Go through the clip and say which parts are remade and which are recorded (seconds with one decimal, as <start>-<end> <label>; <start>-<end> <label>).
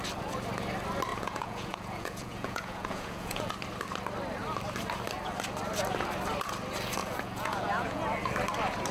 0.0-1.1 recorded; 1.1-3.5 remade; 3.5-7.0 recorded; 7.0-8.0 remade; 8.0-8.9 recorded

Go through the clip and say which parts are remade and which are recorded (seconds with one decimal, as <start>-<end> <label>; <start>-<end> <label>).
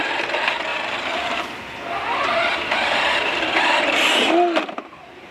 0.0-0.7 recorded; 0.7-1.5 remade; 1.5-2.5 recorded; 2.5-4.2 remade; 4.2-5.3 recorded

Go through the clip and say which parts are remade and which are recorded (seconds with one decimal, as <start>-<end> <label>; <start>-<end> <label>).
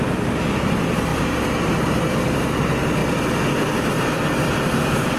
0.0-3.0 remade; 3.0-4.0 recorded; 4.0-5.2 remade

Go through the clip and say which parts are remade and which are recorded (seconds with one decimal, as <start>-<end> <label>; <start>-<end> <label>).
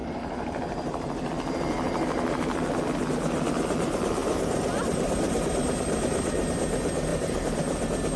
0.0-1.3 remade; 1.3-4.2 recorded; 4.2-5.4 remade; 5.4-7.1 recorded; 7.1-8.2 remade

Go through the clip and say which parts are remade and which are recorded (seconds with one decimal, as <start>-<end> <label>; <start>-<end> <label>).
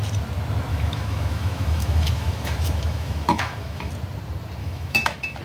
0.0-0.7 recorded; 0.7-3.9 remade; 3.9-4.6 recorded; 4.6-5.4 remade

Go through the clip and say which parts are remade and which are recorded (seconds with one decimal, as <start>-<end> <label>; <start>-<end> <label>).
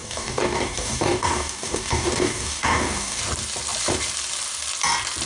0.0-3.2 remade; 3.2-5.3 recorded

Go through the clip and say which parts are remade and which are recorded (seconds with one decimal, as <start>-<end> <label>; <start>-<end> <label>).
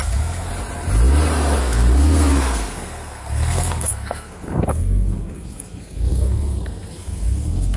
0.0-0.5 remade; 0.5-1.6 recorded; 1.6-7.8 remade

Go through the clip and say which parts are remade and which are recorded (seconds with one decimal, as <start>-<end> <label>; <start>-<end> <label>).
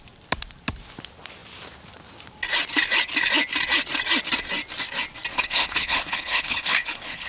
0.0-5.3 recorded; 5.3-7.3 remade